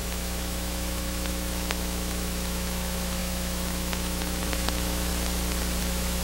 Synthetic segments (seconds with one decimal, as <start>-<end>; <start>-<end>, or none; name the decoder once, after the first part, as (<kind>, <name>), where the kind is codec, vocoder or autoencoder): 0.0-5.1 (autoencoder, DAC-VAE); 5.8-6.2